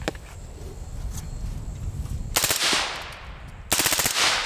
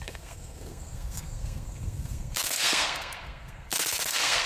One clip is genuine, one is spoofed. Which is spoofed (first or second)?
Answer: second